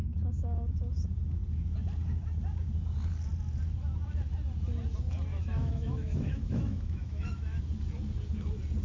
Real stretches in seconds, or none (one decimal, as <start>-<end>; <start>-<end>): 0.0-5.3; 7.6-8.8